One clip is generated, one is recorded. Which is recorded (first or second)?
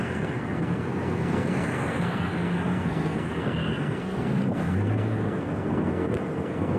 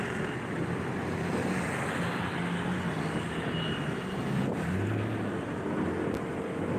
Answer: second